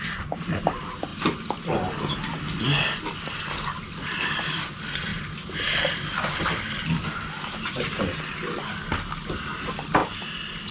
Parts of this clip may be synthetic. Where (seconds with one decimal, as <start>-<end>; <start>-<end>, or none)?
none

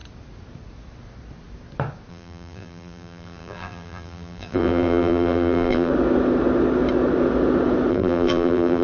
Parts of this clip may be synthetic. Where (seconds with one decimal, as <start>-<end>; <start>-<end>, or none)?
2.1-5.9; 7.9-8.8

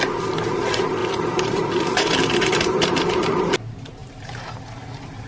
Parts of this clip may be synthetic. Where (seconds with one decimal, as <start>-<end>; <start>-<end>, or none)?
1.0-3.4; 4.0-5.3

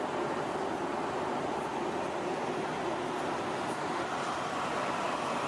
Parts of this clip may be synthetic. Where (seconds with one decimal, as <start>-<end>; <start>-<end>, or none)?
none

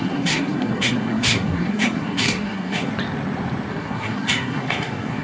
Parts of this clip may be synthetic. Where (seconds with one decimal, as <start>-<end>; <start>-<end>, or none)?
0.0-2.9; 3.7-5.2

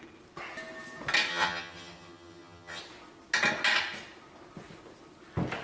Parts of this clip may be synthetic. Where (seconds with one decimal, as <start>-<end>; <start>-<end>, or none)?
1.3-2.8

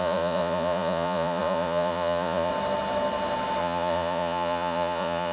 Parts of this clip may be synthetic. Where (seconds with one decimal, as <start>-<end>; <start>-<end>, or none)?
0.0-2.5; 3.6-5.3

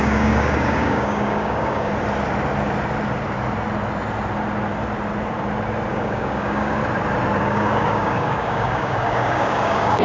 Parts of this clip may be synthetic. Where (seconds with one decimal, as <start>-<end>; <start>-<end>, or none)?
0.0-1.9; 5.9-6.8; 7.4-10.0